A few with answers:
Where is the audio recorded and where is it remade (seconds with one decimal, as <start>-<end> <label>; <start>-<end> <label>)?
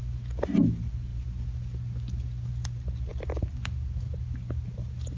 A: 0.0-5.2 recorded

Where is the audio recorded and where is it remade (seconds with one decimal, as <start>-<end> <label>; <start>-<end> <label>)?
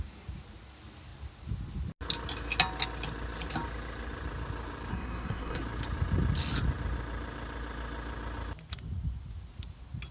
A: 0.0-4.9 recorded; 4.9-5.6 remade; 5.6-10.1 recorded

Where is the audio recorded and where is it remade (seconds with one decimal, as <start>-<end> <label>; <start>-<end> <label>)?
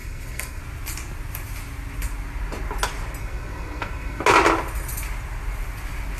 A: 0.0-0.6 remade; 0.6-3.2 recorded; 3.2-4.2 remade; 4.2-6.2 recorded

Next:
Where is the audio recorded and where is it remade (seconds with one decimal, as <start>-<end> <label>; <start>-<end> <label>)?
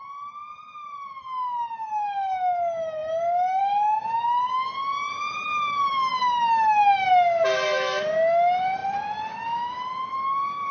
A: 0.0-10.7 recorded